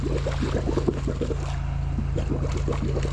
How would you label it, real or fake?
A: real